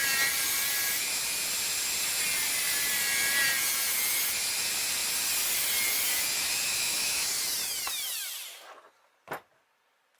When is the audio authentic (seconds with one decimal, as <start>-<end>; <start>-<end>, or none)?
0.0-6.7; 7.3-10.2